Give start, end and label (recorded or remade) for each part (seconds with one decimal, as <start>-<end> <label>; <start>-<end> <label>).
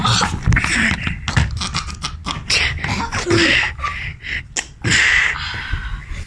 0.0-6.3 recorded